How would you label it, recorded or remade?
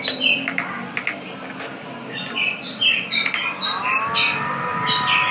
recorded